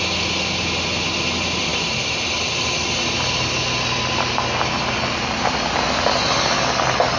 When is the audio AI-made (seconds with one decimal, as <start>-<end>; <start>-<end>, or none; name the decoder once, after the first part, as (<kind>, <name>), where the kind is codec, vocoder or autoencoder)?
1.7-2.4 (vocoder, BigVGAN v2)

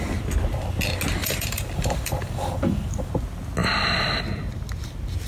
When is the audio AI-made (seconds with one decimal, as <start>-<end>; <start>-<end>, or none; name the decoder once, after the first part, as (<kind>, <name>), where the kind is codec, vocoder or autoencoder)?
1.2-3.1 (vocoder, BigVGAN v2)

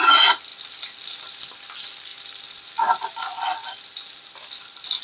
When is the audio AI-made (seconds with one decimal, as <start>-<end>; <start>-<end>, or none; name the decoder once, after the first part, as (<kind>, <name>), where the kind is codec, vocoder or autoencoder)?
none

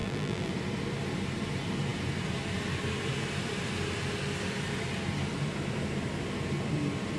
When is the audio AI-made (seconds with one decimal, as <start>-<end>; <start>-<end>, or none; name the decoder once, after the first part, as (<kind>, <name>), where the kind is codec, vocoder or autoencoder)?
0.0-0.5 (vocoder, BigVGAN v2)

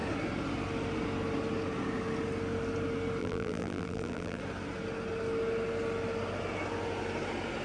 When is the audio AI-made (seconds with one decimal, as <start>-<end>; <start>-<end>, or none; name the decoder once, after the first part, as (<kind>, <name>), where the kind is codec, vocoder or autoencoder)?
3.2-4.4 (vocoder, BigVGAN v2)

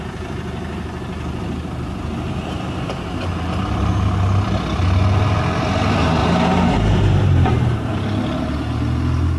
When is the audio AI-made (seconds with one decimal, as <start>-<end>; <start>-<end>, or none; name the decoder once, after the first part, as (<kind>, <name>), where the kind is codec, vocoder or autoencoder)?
6.2-7.9 (vocoder, BigVGAN v2)